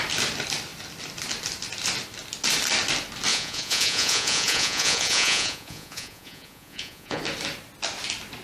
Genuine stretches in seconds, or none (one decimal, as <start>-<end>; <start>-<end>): 0.0-3.3; 7.2-8.4